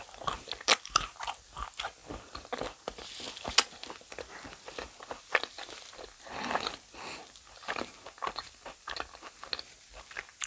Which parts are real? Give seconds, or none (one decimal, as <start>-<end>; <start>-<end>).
0.0-10.5

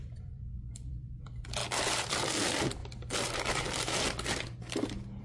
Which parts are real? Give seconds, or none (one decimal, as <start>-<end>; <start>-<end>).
1.6-2.1; 2.8-5.2